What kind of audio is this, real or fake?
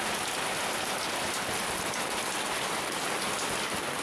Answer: real